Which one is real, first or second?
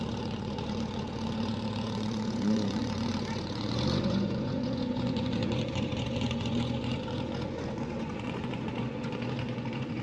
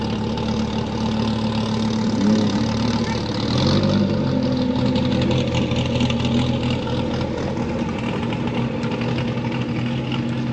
second